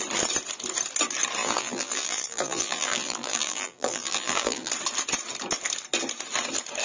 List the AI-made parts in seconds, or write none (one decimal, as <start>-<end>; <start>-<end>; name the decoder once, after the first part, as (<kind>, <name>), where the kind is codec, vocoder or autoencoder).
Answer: 1.4-4.7 (vocoder, BigVGAN v2)